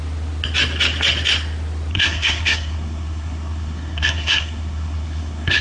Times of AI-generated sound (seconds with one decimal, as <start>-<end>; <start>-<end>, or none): 1.9-5.6